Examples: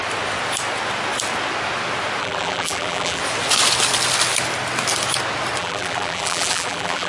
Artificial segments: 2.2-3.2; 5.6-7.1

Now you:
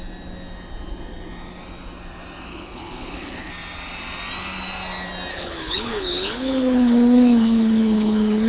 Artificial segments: 2.5-3.5; 5.3-8.5